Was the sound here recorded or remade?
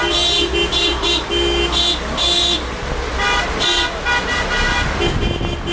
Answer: recorded